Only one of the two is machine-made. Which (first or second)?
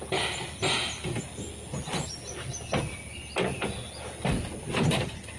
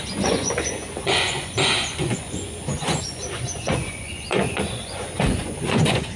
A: second